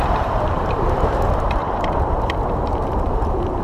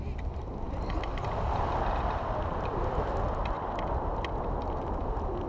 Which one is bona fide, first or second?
second